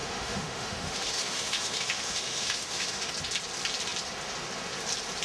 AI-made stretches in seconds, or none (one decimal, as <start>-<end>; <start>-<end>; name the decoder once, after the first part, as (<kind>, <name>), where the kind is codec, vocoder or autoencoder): 0.0-3.1 (autoencoder, DAC-VAE)